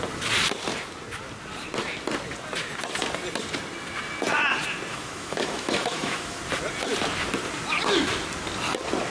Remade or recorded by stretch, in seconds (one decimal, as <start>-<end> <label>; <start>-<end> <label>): 0.0-4.9 recorded; 4.9-6.4 remade; 6.4-9.1 recorded